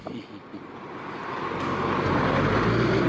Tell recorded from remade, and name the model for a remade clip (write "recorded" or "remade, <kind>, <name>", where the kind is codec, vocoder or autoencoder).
recorded